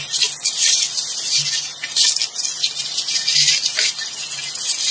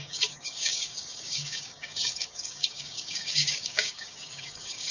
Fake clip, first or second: second